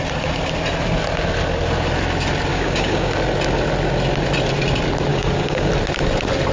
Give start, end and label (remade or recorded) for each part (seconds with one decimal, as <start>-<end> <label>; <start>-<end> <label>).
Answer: 0.0-2.5 recorded; 2.5-3.1 remade; 3.1-5.1 recorded; 5.1-5.7 remade; 5.7-6.5 recorded